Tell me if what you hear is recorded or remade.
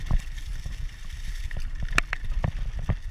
remade